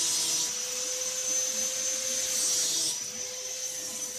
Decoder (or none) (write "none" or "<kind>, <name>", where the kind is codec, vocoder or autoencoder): none